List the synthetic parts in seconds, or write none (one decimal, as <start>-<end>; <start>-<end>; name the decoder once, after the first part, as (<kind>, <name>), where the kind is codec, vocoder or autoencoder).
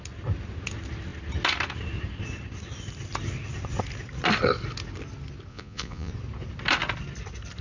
5.5-6.1 (vocoder, Vocos)